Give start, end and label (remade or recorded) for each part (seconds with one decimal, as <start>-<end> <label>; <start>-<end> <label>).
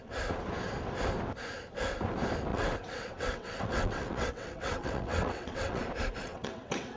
0.0-2.5 recorded; 2.5-5.8 remade; 5.8-6.2 recorded; 6.2-7.0 remade